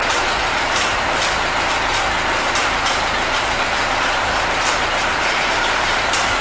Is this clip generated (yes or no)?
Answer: yes